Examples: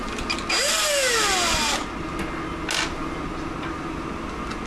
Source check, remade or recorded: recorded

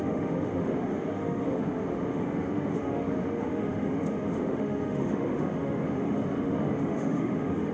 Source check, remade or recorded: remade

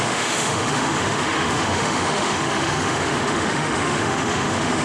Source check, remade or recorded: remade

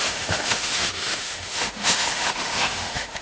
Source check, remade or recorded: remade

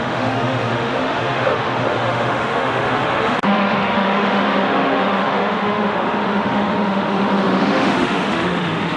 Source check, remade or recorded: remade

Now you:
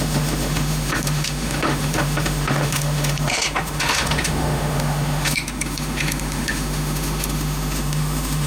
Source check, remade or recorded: remade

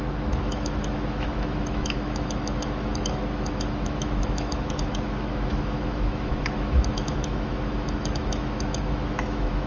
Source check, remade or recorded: remade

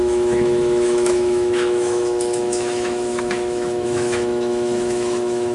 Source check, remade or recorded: remade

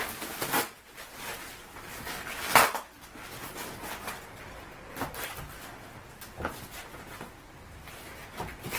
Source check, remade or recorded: recorded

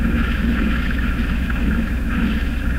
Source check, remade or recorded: remade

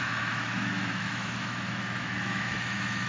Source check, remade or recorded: remade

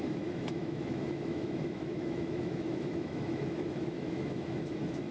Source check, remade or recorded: remade